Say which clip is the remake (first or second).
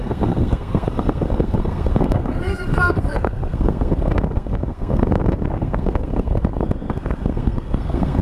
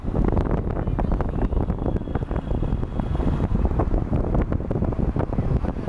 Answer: first